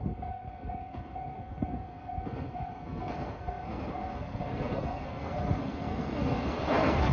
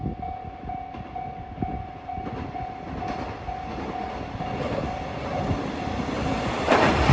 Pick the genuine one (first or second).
second